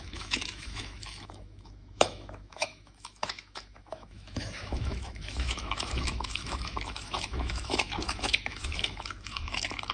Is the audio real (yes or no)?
no